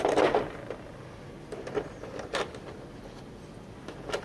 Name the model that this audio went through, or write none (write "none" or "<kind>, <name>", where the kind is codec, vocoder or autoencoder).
none